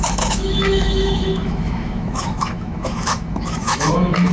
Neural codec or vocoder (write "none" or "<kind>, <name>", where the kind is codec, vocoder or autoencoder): autoencoder, DAC-VAE